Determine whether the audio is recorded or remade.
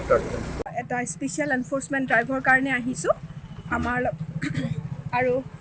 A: recorded